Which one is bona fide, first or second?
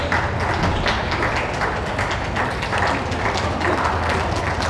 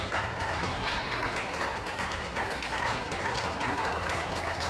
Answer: first